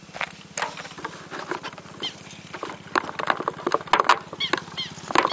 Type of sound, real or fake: real